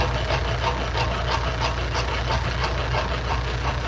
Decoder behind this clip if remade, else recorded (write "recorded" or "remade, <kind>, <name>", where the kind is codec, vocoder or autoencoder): recorded